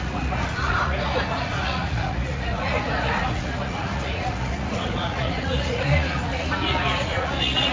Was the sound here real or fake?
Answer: fake